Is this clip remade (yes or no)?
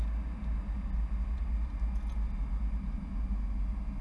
no